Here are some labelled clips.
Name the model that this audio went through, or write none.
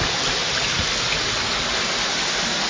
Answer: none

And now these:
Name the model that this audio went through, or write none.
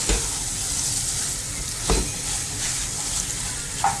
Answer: none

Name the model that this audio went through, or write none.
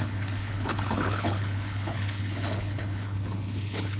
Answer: codec, HILCodec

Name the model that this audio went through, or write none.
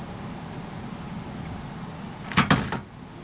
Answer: none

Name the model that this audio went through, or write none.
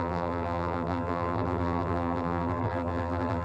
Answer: vocoder, BigVGAN v2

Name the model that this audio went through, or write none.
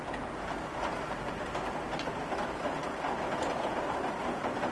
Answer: none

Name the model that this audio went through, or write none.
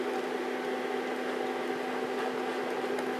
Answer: none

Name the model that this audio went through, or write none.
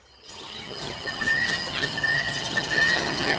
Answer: vocoder, HiFi-GAN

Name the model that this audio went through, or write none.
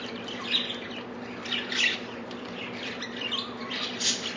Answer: vocoder, BigVGAN v2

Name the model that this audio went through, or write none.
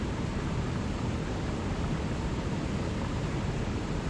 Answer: none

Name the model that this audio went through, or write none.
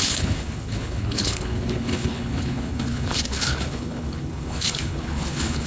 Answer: codec, HILCodec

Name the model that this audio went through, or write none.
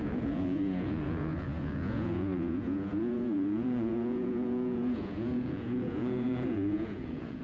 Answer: vocoder, Vocos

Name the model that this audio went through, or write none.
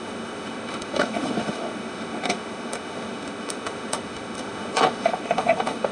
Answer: autoencoder, DAC-VAE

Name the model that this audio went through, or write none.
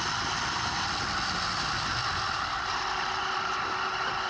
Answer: none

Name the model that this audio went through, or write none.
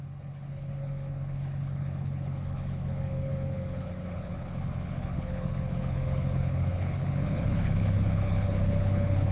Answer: codec, HILCodec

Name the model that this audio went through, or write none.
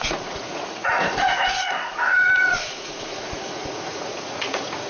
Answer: vocoder, Vocos